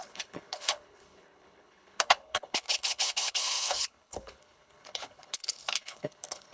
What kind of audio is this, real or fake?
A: fake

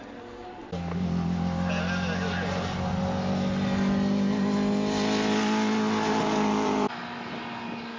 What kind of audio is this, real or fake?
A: real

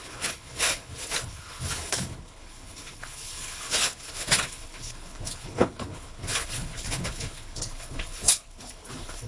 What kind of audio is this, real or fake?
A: fake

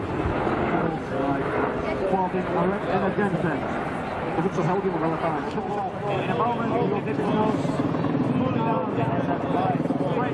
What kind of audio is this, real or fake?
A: real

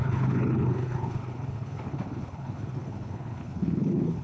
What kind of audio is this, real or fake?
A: fake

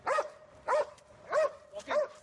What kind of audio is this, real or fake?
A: real